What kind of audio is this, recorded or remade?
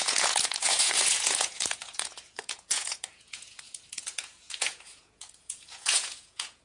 remade